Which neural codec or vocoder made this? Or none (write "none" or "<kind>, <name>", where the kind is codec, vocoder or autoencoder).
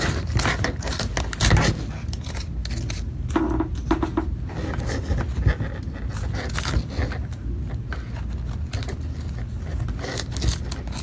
none